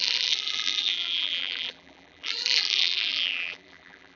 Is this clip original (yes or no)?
no